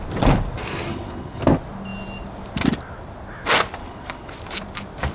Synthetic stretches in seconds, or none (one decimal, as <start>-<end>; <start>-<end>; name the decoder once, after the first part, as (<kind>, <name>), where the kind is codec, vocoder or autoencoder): 0.9-1.4 (codec, HILCodec); 3.8-4.3